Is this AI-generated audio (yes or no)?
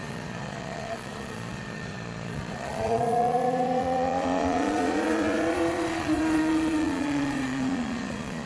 yes